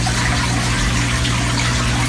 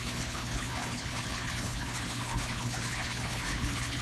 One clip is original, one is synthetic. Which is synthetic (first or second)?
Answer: second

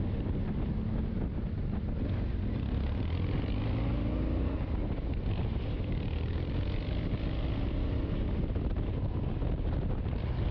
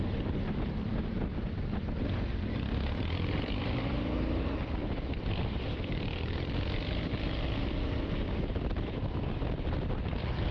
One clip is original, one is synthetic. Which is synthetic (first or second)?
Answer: second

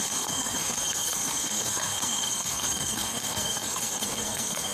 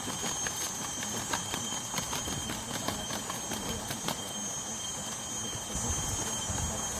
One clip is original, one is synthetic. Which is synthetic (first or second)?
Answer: first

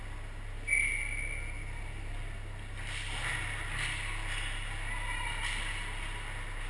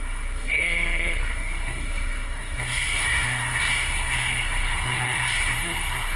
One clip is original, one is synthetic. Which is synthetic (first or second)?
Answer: second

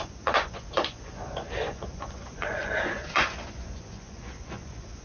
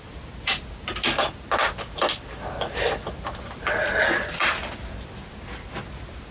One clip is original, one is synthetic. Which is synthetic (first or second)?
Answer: first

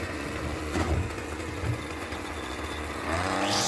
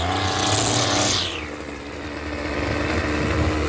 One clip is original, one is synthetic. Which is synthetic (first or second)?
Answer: first